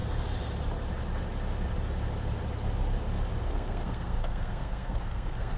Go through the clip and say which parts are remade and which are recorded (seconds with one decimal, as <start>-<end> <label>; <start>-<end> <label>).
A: 0.0-3.4 recorded; 3.4-5.6 remade